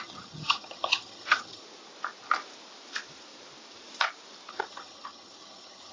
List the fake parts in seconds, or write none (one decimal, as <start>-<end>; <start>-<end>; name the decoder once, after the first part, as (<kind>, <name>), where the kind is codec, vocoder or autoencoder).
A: 0.0-1.6 (vocoder, HiFi-GAN); 4.5-5.9

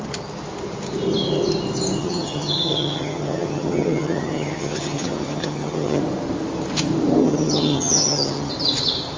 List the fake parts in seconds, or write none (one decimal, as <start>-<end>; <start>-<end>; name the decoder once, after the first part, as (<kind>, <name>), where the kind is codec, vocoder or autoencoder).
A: 2.0-6.0 (vocoder, HiFi-GAN); 7.2-8.5

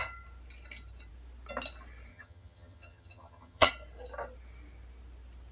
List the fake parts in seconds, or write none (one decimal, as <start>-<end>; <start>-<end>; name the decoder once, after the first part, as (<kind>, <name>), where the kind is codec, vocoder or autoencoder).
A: 2.1-3.7 (vocoder, HiFi-GAN)